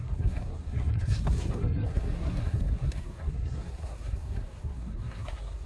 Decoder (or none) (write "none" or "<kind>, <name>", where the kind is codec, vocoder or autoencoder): codec, SNAC